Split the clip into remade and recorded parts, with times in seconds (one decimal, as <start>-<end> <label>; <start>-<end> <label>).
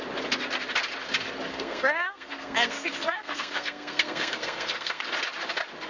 0.0-1.5 recorded; 1.5-5.0 remade; 5.0-5.9 recorded